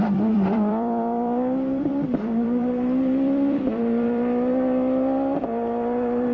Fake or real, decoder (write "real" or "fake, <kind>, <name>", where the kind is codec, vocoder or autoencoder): fake, vocoder, BigVGAN v2